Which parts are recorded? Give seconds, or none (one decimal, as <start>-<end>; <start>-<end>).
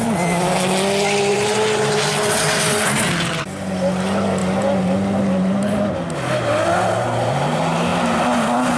0.0-1.3; 2.8-8.8